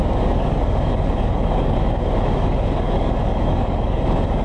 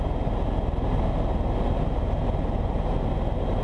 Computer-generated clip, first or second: first